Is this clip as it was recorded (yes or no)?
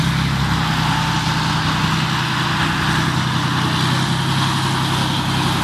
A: yes